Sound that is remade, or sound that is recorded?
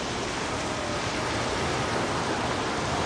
recorded